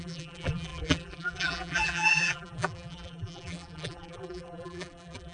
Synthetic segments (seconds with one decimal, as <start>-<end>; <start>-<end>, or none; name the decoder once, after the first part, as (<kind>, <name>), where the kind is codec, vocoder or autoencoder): 0.0-5.3 (vocoder, BigVGAN v2)